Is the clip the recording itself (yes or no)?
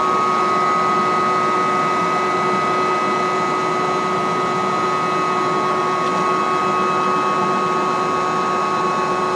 yes